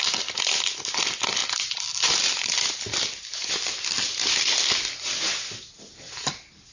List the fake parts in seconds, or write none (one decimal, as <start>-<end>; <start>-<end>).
none